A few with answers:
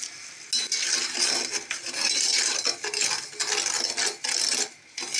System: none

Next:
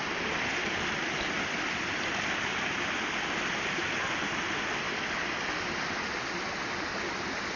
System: none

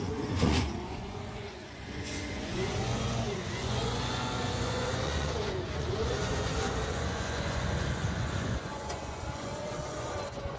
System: vocoder, Vocos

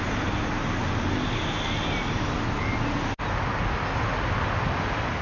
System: none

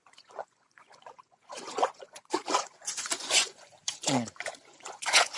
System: vocoder, Vocos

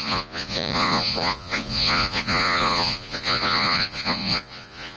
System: vocoder, Vocos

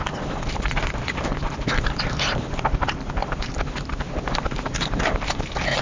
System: none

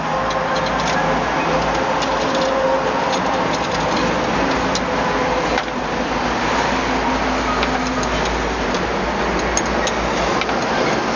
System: none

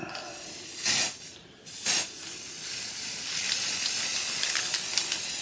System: none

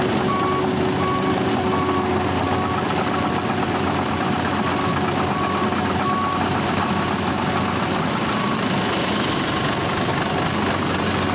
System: none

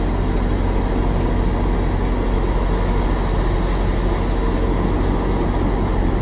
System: none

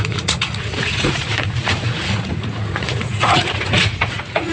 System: vocoder, Vocos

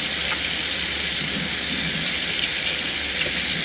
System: none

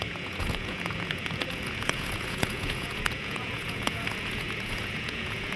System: vocoder, Vocos